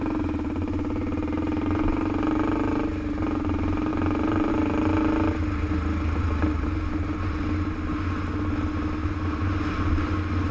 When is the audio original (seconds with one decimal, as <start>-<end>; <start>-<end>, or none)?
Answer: 0.0-3.9; 4.5-10.5